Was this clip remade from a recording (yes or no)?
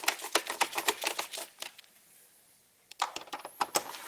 no